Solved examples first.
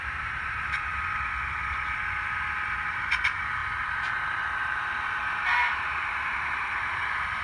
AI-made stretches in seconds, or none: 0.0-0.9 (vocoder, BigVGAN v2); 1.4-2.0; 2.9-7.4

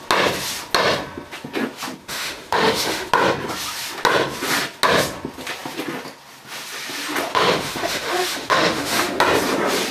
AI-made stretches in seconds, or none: 2.0-3.1 (autoencoder, DAC-VAE); 7.3-9.2

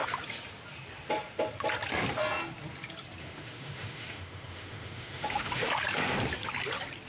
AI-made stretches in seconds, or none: 3.2-5.7 (autoencoder, DAC-VAE)

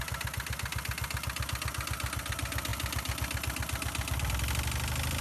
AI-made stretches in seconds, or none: none

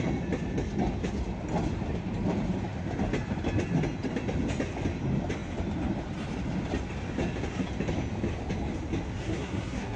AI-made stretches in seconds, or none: 9.2-10.0 (codec, SNAC)

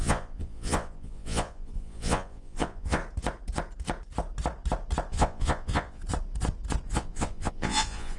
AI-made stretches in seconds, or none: 0.0-3.0 (vocoder, Vocos); 5.1-6.0; 6.9-8.2

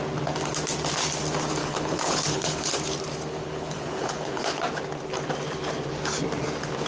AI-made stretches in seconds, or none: 1.6-2.7 (codec, HILCodec); 3.4-4.6